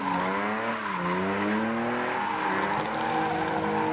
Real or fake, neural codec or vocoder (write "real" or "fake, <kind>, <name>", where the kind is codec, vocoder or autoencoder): real